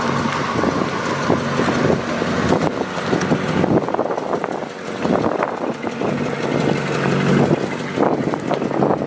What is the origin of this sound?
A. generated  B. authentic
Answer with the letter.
B